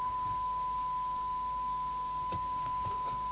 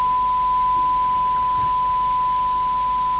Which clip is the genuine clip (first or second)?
second